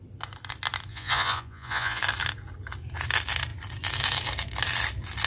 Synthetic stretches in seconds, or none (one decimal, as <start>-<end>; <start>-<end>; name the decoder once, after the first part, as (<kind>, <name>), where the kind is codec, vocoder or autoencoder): 0.9-2.0 (vocoder, Vocos)